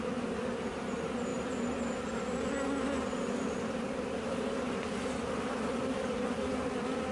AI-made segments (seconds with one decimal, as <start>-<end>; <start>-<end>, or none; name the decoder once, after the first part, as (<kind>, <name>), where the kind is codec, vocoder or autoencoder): 1.3-5.5 (vocoder, BigVGAN v2)

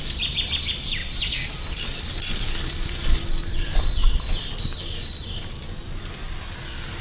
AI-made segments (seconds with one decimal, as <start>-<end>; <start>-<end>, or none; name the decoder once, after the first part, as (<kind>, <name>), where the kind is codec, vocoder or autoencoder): 1.0-4.3 (vocoder, BigVGAN v2)

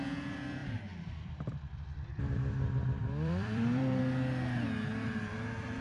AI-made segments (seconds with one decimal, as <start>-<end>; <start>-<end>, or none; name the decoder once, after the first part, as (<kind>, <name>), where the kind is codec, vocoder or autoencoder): 0.6-4.0 (vocoder, BigVGAN v2)

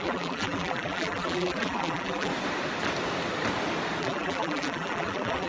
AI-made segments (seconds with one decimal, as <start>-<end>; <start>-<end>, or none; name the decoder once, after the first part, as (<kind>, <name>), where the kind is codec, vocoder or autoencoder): 0.0-2.3 (vocoder, BigVGAN v2); 4.0-5.5

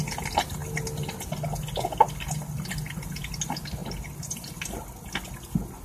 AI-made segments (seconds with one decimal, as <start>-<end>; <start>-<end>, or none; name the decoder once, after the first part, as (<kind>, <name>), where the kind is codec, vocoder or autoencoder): none

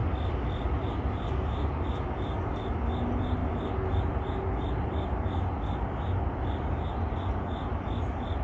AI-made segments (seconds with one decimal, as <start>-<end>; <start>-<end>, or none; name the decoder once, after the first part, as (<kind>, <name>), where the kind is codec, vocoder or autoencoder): 0.0-0.9 (vocoder, BigVGAN v2)